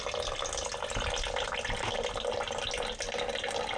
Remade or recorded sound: recorded